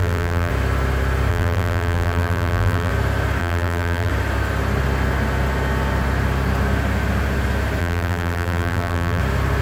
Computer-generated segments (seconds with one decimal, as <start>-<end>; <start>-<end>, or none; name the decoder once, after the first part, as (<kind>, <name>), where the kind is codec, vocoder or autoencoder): 0.0-0.5 (vocoder, BigVGAN v2); 1.3-2.9; 3.4-4.1; 7.8-9.2